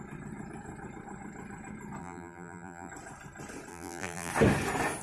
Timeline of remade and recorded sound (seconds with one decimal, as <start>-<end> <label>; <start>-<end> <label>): 0.0-2.0 recorded; 2.0-2.9 remade; 2.9-3.7 recorded; 3.7-4.3 remade; 4.3-5.0 recorded